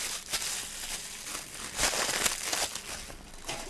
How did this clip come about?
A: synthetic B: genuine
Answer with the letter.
B